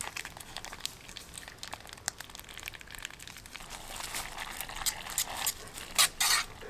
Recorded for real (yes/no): yes